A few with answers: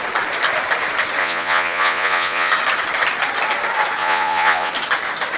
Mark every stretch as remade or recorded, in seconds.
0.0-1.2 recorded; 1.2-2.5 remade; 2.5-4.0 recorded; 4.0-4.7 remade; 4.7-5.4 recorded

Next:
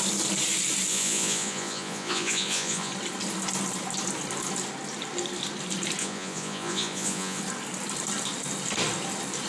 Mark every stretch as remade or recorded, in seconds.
0.0-0.9 recorded; 0.9-2.9 remade; 2.9-6.0 recorded; 6.0-7.4 remade; 7.4-9.5 recorded

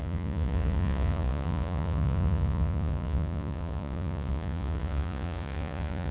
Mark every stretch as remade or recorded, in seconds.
0.0-6.1 remade

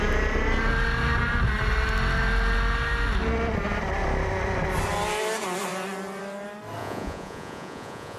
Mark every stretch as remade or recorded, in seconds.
0.0-6.8 recorded; 6.8-8.2 remade

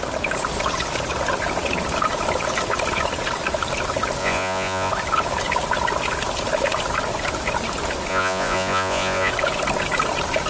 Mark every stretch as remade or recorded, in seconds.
0.0-4.2 recorded; 4.2-4.9 remade; 4.9-8.1 recorded; 8.1-9.3 remade; 9.3-10.5 recorded

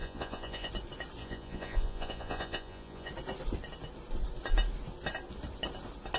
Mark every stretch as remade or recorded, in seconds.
0.0-0.7 remade; 0.7-1.2 recorded; 1.2-3.1 remade; 3.1-6.2 recorded